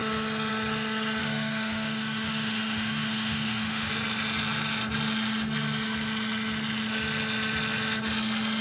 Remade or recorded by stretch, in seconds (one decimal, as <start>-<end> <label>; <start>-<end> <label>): 0.0-1.2 recorded; 1.2-3.9 remade; 3.9-8.6 recorded

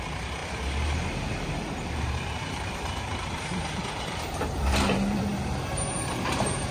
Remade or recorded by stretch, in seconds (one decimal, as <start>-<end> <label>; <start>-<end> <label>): 0.0-6.7 remade